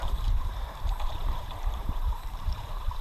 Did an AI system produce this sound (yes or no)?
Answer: yes